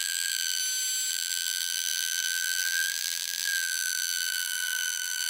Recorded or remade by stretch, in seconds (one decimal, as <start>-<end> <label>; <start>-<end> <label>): 0.0-0.6 remade; 0.6-1.1 recorded; 1.1-5.3 remade